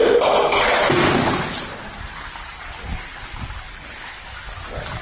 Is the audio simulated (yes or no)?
no